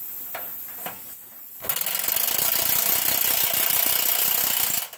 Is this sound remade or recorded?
recorded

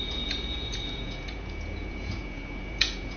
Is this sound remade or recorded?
remade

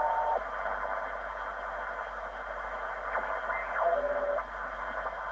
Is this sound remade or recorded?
recorded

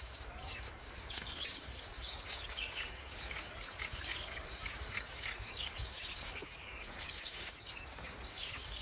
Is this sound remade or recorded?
remade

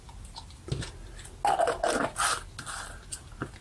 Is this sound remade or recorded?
recorded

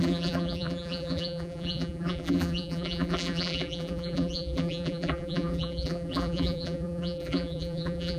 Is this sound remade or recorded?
remade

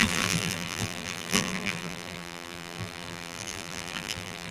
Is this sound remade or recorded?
remade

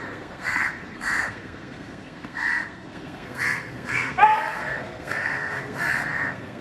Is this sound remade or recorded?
remade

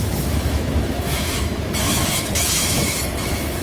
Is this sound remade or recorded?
remade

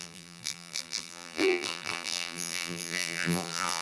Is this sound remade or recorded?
remade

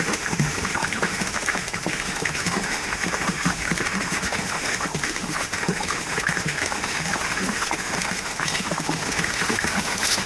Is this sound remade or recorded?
remade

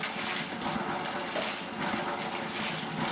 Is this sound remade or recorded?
recorded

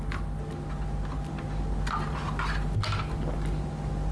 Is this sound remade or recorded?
recorded